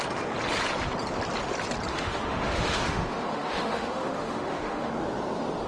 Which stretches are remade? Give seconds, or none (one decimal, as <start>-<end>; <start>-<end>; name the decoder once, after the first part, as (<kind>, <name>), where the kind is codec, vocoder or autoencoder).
1.9-4.9 (autoencoder, DAC-VAE)